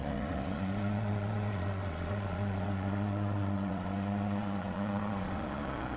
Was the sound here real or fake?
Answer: fake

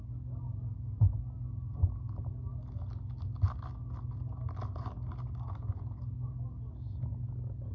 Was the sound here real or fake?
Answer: real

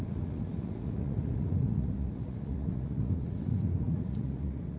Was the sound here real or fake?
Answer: fake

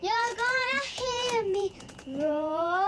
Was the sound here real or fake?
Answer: fake